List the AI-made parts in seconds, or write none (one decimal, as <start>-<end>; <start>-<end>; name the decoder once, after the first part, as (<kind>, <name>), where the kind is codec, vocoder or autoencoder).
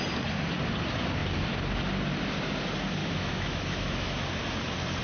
3.0-4.2 (autoencoder, DAC-VAE)